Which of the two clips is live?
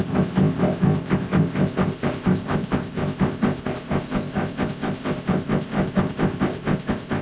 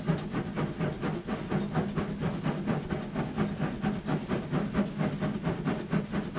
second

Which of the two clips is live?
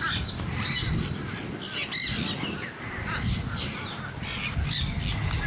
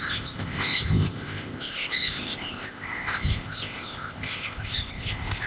first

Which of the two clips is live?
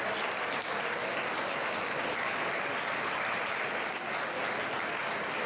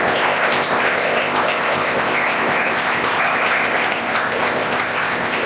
first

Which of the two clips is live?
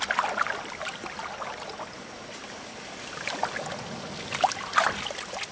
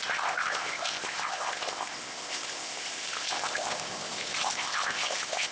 first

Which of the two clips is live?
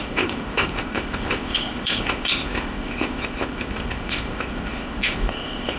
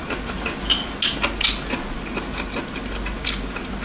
second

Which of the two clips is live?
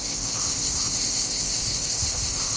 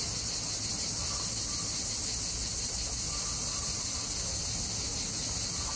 second